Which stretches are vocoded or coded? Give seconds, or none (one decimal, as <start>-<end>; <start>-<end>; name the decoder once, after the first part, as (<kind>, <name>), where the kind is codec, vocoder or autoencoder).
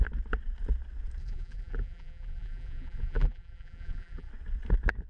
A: 1.2-4.3 (vocoder, BigVGAN v2)